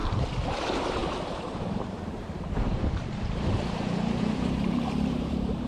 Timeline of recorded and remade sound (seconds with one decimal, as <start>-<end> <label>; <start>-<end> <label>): 0.0-0.6 recorded; 0.6-5.7 remade